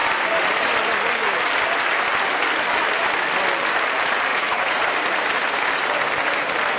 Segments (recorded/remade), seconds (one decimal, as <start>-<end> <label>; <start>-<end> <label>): 0.0-4.3 recorded; 4.3-4.9 remade; 4.9-6.8 recorded